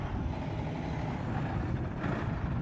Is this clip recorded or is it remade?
recorded